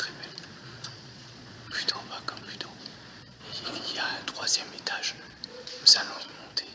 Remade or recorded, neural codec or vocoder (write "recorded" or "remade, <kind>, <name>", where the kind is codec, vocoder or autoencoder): remade, vocoder, Vocos